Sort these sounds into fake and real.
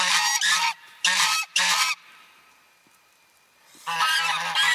fake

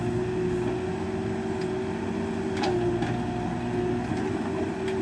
real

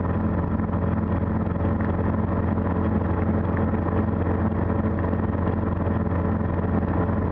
real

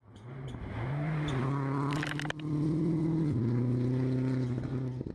real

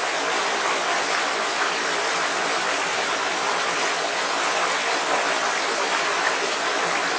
real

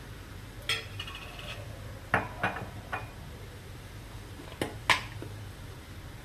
real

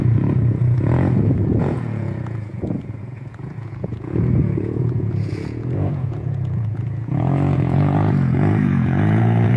fake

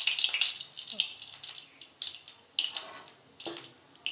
real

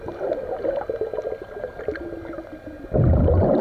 real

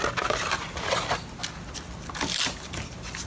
real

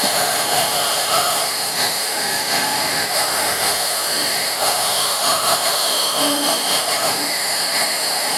fake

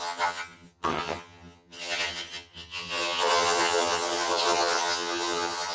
fake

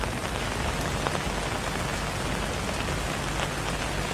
real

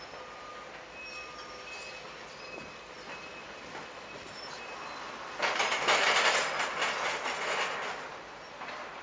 real